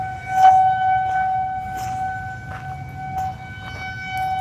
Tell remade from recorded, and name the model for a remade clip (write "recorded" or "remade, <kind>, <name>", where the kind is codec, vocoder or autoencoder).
recorded